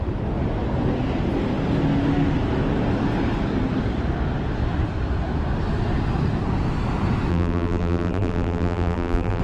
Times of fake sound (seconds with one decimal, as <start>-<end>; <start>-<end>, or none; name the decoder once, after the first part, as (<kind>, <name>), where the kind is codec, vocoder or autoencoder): 7.3-9.4 (vocoder, BigVGAN v2)